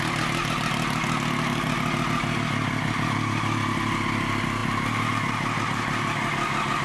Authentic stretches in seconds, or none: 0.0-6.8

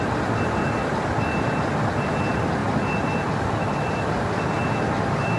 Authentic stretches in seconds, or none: 0.0-0.8; 1.7-5.4